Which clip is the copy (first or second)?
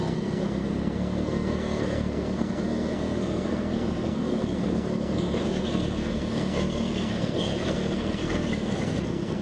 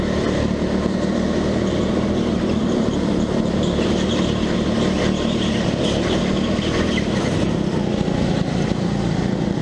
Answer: first